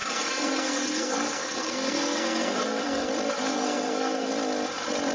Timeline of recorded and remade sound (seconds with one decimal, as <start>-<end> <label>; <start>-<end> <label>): 0.0-3.1 remade; 3.1-3.5 recorded; 3.5-4.3 remade; 4.3-5.1 recorded